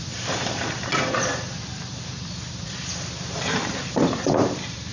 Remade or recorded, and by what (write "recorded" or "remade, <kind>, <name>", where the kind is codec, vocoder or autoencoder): remade, vocoder, BigVGAN v2